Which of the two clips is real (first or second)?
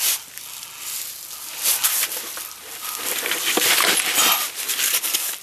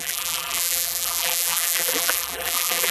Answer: first